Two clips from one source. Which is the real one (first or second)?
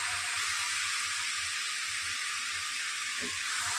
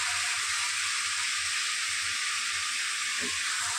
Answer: second